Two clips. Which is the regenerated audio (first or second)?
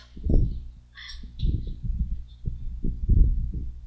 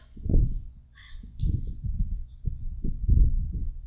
second